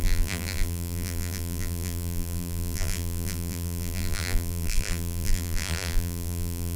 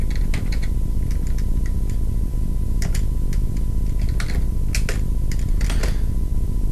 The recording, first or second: second